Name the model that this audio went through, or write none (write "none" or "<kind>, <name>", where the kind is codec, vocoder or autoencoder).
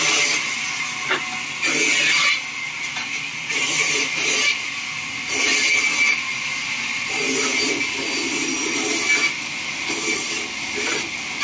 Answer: none